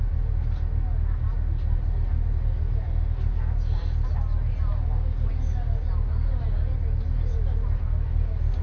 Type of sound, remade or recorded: recorded